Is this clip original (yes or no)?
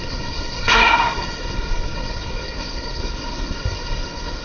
no